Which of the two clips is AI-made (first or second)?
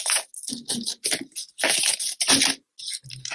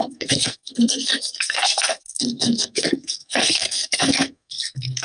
second